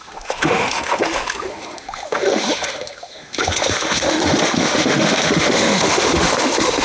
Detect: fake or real fake